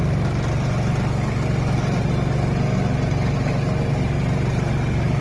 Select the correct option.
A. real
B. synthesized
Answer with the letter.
A